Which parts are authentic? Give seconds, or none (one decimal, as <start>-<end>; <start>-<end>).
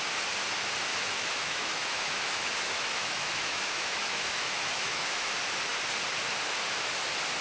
0.0-0.9; 5.3-7.4